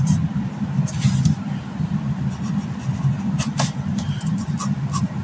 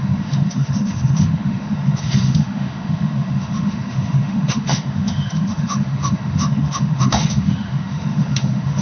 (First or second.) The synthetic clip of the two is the second